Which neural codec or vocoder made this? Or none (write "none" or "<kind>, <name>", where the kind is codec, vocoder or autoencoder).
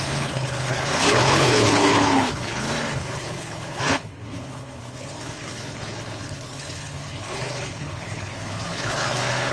codec, HILCodec